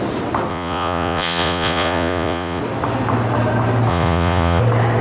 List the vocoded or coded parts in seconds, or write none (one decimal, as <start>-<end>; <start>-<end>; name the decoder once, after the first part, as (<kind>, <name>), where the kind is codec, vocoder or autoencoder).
0.5-2.6 (vocoder, Vocos); 3.9-4.6